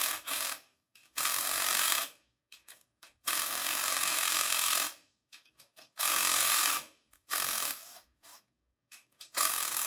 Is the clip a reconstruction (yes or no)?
yes